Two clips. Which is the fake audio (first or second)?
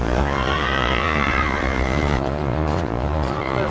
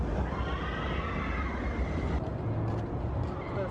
first